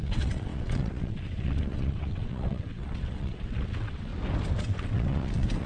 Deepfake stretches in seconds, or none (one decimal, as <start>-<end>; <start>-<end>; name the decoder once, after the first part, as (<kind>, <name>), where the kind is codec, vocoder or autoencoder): 0.0-4.1 (vocoder, WaveNeXt); 4.6-5.7